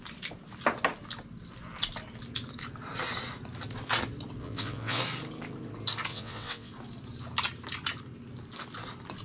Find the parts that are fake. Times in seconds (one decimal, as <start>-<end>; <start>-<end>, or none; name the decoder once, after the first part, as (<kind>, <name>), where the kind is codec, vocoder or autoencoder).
4.4-5.0 (vocoder, WaveNeXt); 6.1-6.7